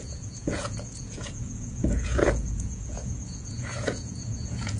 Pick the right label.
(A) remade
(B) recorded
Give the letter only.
A